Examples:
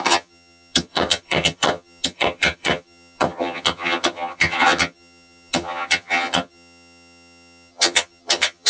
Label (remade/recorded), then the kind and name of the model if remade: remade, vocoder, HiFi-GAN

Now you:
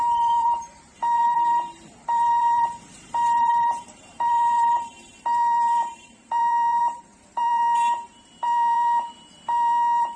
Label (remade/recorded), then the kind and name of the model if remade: remade, vocoder, BigVGAN v2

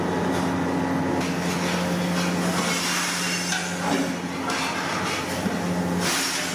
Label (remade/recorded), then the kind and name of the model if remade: recorded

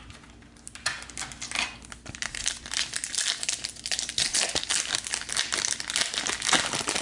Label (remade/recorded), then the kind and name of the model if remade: recorded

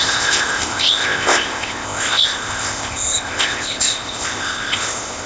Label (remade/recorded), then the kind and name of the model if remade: remade, codec, ZipCodec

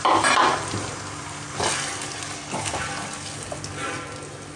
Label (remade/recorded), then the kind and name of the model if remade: recorded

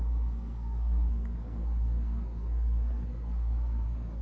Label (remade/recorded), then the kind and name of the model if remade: remade, codec, SNAC